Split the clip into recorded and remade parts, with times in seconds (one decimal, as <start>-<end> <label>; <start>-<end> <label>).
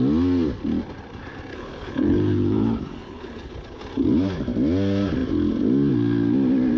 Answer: 0.0-1.5 recorded; 1.5-3.8 remade; 3.8-6.8 recorded